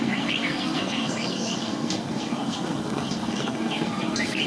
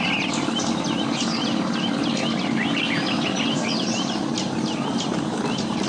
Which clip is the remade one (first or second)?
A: first